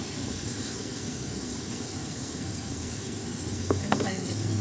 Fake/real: fake